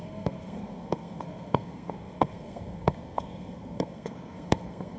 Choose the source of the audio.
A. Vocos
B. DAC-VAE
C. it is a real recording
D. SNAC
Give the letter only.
D